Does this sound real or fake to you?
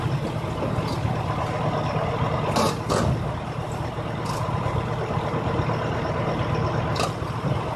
real